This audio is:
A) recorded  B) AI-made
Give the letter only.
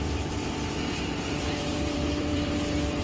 B